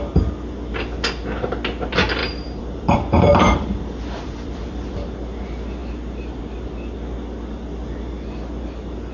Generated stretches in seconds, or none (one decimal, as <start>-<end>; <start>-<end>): 2.2-4.9